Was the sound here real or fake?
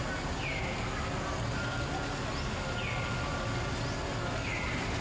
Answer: real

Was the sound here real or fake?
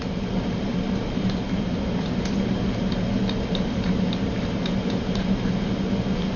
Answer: real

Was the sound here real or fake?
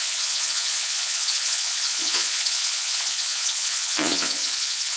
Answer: fake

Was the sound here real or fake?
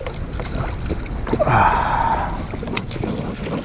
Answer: real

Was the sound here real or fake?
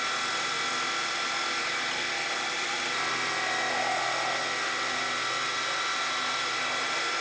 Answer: real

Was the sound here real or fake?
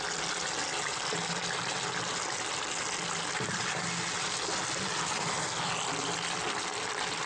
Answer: real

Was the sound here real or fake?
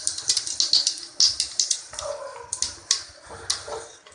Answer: real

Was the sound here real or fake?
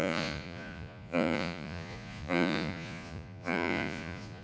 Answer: fake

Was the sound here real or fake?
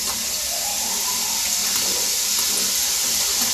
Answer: real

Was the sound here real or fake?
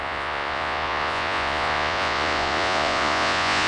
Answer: fake